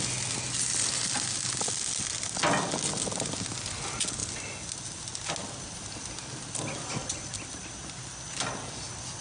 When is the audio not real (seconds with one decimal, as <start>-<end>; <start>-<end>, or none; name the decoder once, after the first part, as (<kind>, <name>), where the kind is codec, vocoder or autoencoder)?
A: none